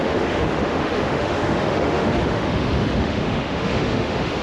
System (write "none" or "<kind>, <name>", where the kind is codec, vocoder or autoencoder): autoencoder, DAC-VAE